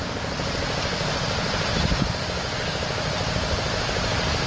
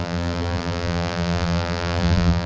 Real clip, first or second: first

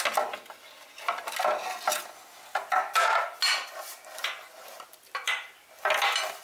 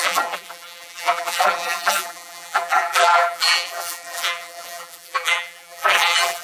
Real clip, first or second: first